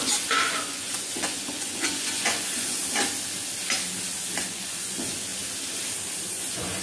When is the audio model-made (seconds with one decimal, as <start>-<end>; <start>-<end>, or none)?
0.0-2.8; 4.4-5.3; 6.3-6.8